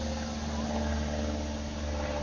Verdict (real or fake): real